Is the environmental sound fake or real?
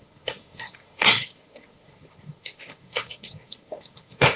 fake